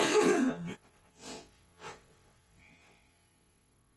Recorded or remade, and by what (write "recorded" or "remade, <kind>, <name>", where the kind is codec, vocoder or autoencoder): remade, vocoder, WaveNeXt